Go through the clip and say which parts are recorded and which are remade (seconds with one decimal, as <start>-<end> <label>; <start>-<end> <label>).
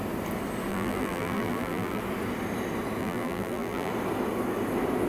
0.0-0.7 recorded; 0.7-2.0 remade; 2.0-3.0 recorded; 3.0-3.9 remade; 3.9-5.1 recorded